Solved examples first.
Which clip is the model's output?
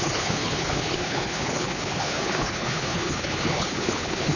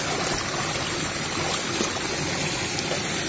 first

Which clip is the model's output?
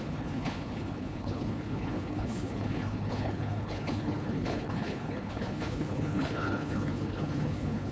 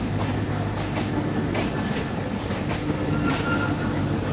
first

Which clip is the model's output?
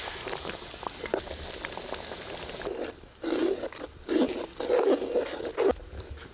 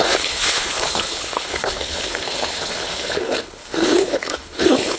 second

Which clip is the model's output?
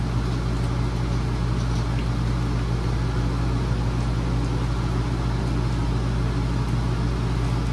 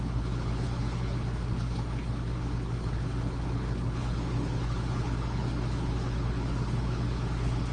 second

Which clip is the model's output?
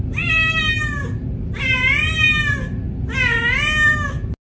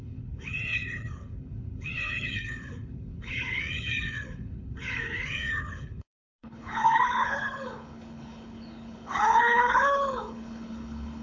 second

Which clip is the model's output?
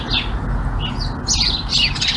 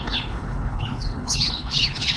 second